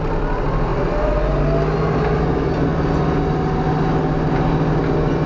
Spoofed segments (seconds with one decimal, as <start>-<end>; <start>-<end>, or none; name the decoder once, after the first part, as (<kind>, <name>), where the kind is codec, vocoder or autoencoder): none